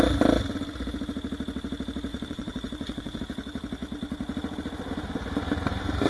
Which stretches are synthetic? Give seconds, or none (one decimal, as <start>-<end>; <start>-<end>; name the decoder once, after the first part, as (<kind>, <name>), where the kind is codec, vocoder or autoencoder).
2.1-3.2 (vocoder, Vocos)